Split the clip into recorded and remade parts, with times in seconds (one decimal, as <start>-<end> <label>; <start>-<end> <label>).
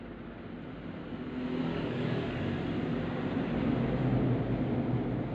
0.0-1.6 recorded; 1.6-2.4 remade; 2.4-5.3 recorded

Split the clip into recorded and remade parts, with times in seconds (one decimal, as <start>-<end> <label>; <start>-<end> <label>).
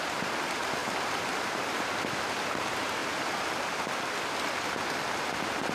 0.0-3.0 remade; 3.0-3.7 recorded; 3.7-5.7 remade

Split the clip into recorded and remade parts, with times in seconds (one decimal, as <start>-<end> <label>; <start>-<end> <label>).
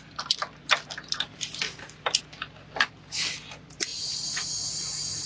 0.0-5.3 recorded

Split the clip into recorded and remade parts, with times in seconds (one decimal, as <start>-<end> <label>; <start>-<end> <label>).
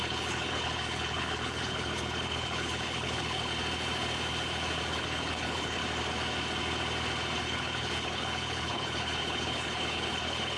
0.0-3.5 remade; 3.5-4.9 recorded; 4.9-5.8 remade; 5.8-7.4 recorded; 7.4-10.6 remade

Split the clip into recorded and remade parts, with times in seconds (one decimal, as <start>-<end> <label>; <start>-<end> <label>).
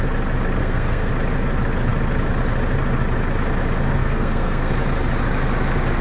0.0-0.6 recorded; 0.6-1.1 remade; 1.1-4.0 recorded; 4.0-4.7 remade; 4.7-6.0 recorded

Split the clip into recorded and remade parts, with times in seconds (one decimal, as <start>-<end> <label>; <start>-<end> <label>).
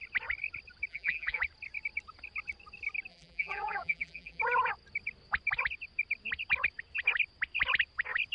0.0-0.9 recorded; 0.9-1.4 remade; 1.4-3.1 recorded; 3.1-4.4 remade; 4.4-8.3 recorded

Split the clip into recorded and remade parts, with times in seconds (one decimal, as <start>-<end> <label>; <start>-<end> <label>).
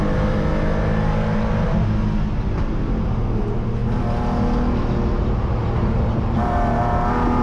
0.0-7.4 recorded